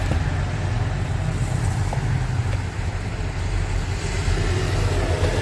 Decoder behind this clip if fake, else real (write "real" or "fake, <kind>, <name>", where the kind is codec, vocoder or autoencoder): real